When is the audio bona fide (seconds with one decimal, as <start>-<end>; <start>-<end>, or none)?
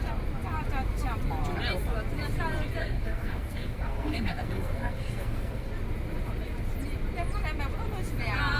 0.0-2.8; 5.7-8.6